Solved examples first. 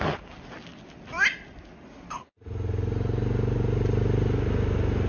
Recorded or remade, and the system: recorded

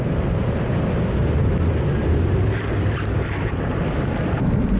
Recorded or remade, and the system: recorded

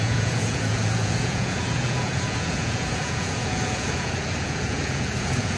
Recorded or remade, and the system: remade, vocoder, Vocos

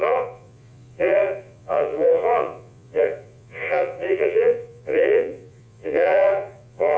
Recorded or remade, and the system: remade, vocoder, Vocos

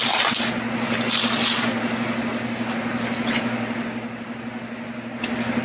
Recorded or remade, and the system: recorded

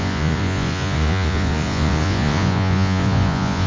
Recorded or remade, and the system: remade, vocoder, Vocos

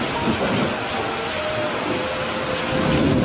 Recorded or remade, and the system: recorded